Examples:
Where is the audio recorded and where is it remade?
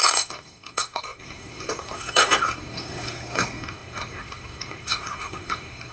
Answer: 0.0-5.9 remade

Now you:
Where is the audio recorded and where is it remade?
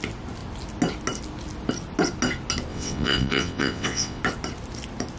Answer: 0.0-2.7 recorded; 2.7-4.2 remade; 4.2-5.2 recorded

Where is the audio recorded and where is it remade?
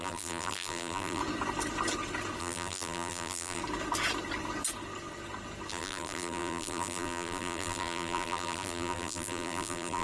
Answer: 0.0-1.2 remade; 1.2-2.4 recorded; 2.4-3.6 remade; 3.6-5.7 recorded; 5.7-10.0 remade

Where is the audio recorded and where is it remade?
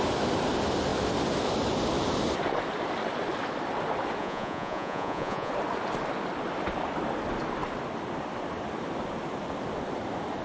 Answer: 0.0-4.2 recorded; 4.2-5.5 remade; 5.5-10.4 recorded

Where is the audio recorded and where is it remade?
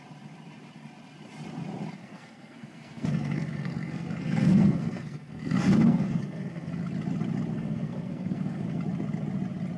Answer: 0.0-2.0 recorded; 2.0-6.8 remade; 6.8-7.5 recorded; 7.5-8.8 remade; 8.8-9.8 recorded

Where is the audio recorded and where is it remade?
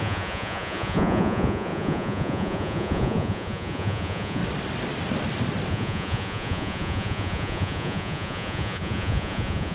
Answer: 0.0-4.4 remade; 4.4-5.7 recorded; 5.7-9.7 remade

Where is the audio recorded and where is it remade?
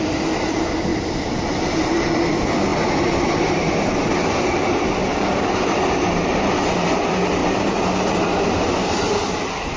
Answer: 0.0-0.9 remade; 0.9-1.8 recorded; 1.8-2.7 remade; 2.7-3.4 recorded; 3.4-9.8 remade